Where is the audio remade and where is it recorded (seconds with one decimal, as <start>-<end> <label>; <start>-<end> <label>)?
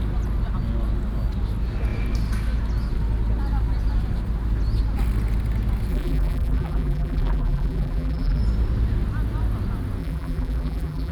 0.0-5.9 recorded; 5.9-8.4 remade; 8.4-10.0 recorded; 10.0-11.1 remade